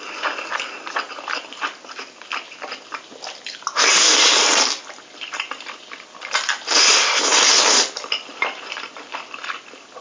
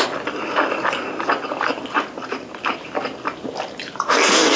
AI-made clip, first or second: first